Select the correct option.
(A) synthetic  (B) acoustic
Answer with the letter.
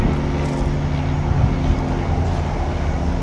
B